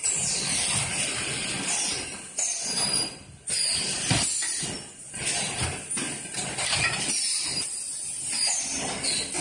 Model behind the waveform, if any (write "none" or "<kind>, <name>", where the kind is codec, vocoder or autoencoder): none